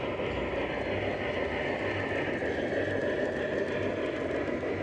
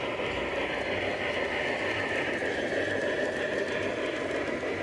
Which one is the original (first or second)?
first